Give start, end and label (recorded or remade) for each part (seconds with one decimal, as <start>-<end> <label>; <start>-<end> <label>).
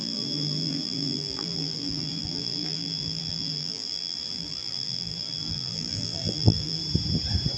0.0-6.8 remade; 6.8-7.6 recorded